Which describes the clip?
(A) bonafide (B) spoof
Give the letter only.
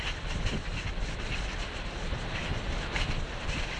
A